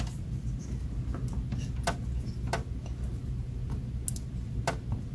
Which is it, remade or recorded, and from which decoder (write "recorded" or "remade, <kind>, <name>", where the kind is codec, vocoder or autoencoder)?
recorded